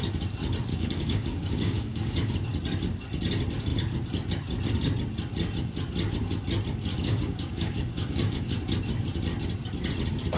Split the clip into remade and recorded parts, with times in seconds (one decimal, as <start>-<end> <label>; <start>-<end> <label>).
0.0-0.7 recorded; 0.7-2.3 remade; 2.3-6.9 recorded; 6.9-8.5 remade; 8.5-10.4 recorded